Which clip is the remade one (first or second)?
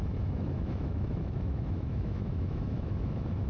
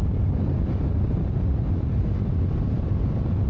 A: first